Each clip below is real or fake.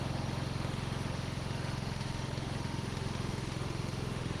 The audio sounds fake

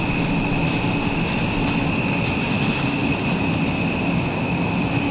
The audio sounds real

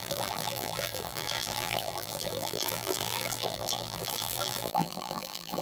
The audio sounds fake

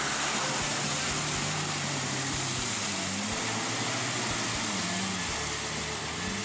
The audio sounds real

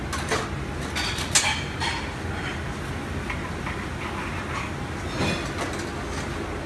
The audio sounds real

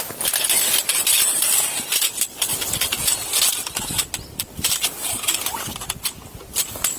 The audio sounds real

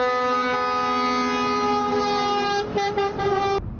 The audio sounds real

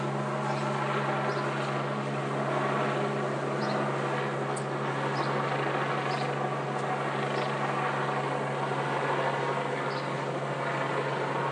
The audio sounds real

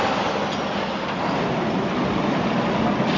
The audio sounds real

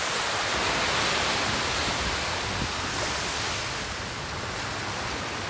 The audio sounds real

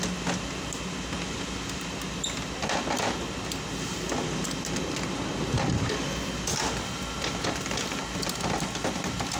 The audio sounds real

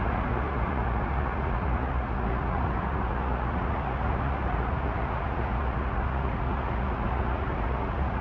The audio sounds fake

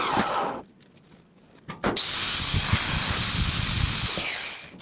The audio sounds real